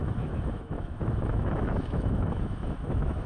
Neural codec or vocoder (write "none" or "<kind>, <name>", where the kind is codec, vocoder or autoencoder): autoencoder, DAC-VAE